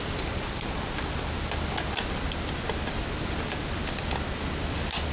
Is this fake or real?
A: real